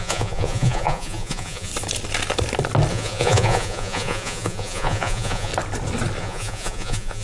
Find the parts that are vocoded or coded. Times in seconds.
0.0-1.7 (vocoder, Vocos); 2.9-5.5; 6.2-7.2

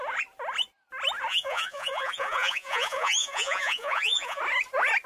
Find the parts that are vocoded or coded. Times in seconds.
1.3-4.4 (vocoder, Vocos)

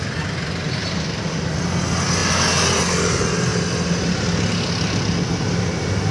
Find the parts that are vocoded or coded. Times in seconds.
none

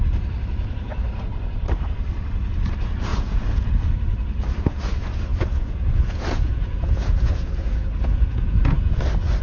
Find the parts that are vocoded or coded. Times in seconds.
3.1-3.7 (vocoder, Vocos); 5.3-9.0

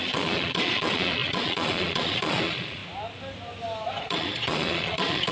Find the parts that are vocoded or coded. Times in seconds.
0.0-2.8 (vocoder, Vocos); 4.0-5.3

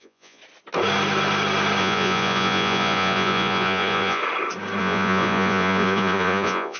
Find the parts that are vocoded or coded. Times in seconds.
0.0-0.4 (vocoder, Vocos); 1.8-4.2; 4.8-6.8

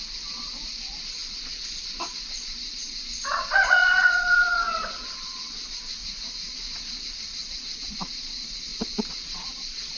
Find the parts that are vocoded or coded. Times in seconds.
0.0-6.0 (vocoder, Vocos); 6.7-10.0

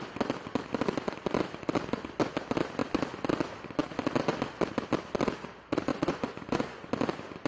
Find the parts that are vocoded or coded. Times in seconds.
5.9-6.9 (vocoder, Vocos)